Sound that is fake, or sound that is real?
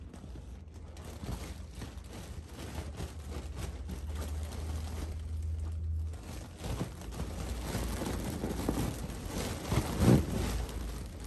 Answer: real